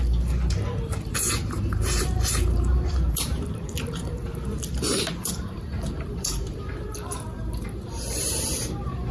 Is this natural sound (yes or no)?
no